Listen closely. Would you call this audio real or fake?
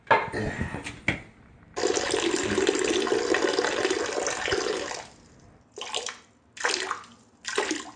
real